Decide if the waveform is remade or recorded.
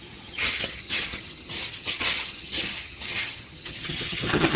remade